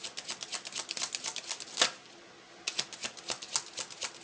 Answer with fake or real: real